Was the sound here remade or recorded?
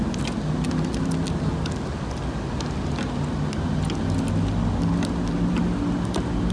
recorded